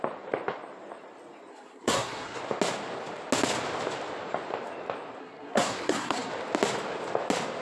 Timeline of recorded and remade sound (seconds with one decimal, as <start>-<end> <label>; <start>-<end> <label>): 0.0-1.5 recorded; 1.5-2.4 remade; 2.4-5.2 recorded; 5.2-6.3 remade; 6.3-7.6 recorded

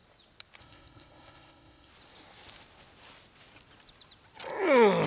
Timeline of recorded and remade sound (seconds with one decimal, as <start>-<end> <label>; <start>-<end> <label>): 0.0-0.6 recorded; 0.6-1.9 remade; 1.9-5.1 recorded

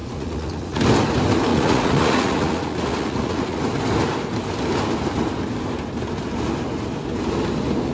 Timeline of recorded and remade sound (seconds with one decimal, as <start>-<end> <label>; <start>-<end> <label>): 0.0-0.8 remade; 0.8-1.5 recorded; 1.5-3.6 remade; 3.6-7.9 recorded

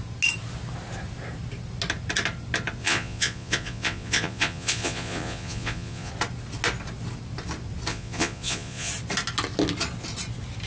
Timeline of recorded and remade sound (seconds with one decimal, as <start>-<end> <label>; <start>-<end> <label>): 0.0-2.8 recorded; 2.8-6.1 remade; 6.1-7.9 recorded; 7.9-8.9 remade; 8.9-10.7 recorded

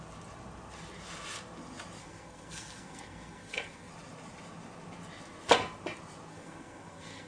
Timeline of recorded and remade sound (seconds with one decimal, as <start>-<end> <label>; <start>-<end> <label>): 0.0-2.0 recorded; 2.0-3.9 remade; 3.9-6.3 recorded; 6.3-7.3 remade

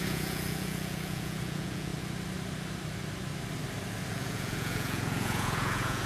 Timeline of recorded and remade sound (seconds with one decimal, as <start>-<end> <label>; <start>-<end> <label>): 0.0-1.9 remade; 1.9-4.1 recorded; 4.1-6.1 remade

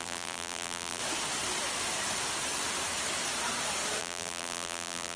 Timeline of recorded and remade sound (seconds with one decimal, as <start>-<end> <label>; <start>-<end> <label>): 0.0-1.0 remade; 1.0-4.0 recorded; 4.0-5.2 remade